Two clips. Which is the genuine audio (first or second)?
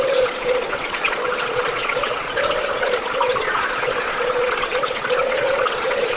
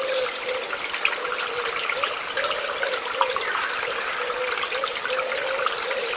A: second